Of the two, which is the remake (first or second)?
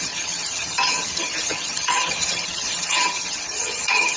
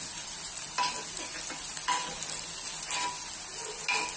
first